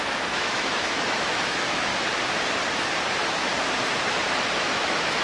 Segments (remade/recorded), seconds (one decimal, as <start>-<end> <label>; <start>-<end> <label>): 0.0-1.9 remade; 1.9-3.1 recorded; 3.1-3.5 remade; 3.5-4.6 recorded; 4.6-5.2 remade